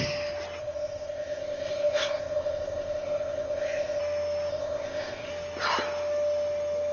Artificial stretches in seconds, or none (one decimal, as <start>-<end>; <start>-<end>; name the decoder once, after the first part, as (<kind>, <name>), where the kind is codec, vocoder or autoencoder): 0.6-4.0 (codec, ZipCodec); 4.5-5.3